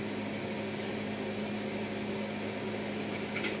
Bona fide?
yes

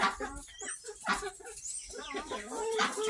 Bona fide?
no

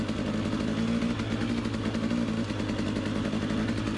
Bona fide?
yes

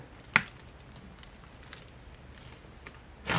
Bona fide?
yes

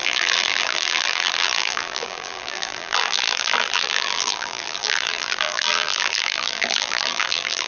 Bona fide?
no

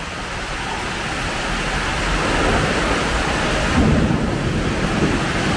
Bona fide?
yes